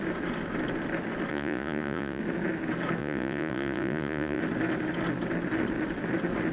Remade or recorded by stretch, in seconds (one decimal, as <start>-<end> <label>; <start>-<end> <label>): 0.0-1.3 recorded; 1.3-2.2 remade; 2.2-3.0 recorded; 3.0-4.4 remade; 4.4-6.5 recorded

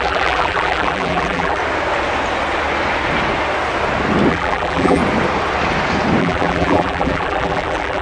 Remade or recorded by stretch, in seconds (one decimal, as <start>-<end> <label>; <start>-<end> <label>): 0.0-1.6 remade; 1.6-4.3 recorded; 4.3-5.0 remade; 5.0-6.2 recorded; 6.2-8.0 remade

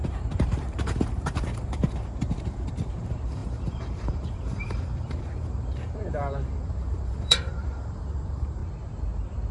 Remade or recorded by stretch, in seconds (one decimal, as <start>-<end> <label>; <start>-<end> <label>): 0.0-8.6 remade; 8.6-9.5 recorded

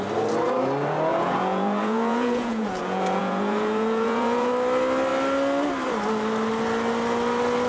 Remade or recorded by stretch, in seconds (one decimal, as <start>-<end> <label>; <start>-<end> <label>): 0.0-1.1 recorded; 1.1-4.5 remade; 4.5-7.7 recorded

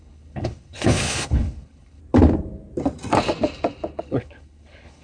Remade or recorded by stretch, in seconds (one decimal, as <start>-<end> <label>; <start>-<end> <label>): 0.0-2.0 remade; 2.0-4.0 recorded; 4.0-5.0 remade